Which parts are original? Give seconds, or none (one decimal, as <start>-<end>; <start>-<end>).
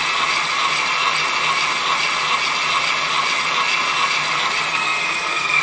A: 0.0-4.7